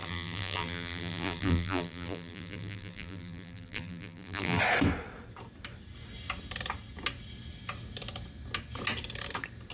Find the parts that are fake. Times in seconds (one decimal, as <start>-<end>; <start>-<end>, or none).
0.0-4.6